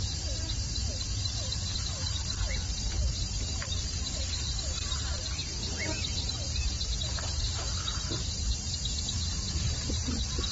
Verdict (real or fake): fake